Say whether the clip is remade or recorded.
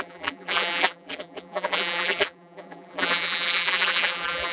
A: remade